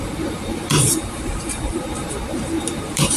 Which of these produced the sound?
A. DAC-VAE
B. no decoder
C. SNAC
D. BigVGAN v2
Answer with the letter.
D